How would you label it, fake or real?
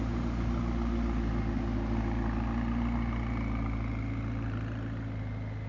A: real